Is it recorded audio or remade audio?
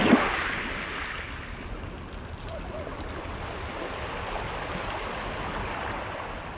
recorded